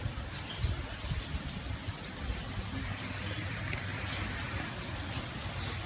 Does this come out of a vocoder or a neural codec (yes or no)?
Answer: no